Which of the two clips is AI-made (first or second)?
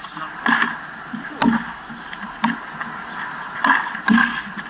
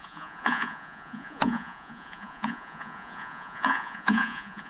second